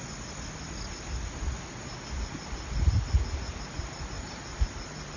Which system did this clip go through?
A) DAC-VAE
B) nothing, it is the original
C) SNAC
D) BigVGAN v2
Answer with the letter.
B